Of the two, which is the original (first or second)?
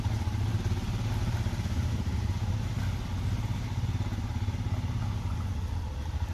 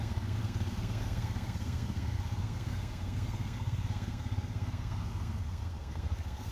first